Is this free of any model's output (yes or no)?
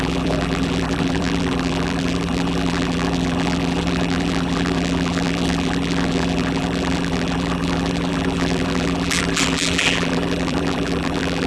no